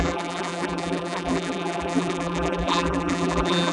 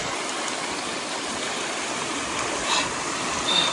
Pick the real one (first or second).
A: second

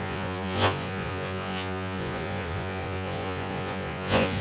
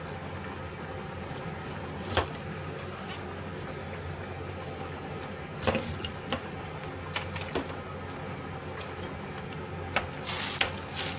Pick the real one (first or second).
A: second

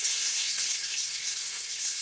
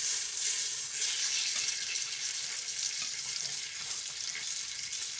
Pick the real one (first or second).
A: second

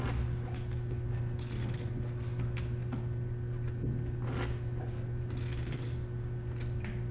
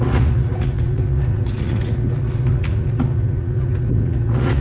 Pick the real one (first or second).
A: first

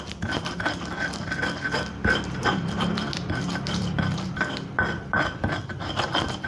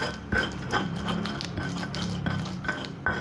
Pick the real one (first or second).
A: second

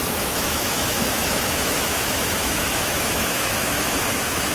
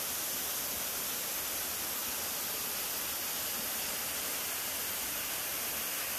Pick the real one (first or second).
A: second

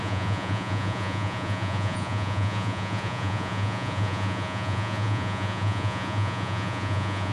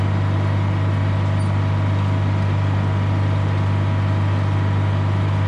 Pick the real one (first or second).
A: second